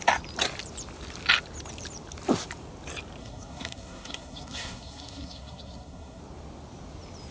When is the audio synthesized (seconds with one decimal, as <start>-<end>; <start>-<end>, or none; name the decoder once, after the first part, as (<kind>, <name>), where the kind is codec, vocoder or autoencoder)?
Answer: 3.2-6.2 (codec, SNAC)